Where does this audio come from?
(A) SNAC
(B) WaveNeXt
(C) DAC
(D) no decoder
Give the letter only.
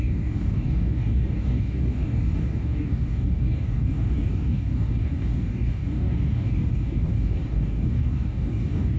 C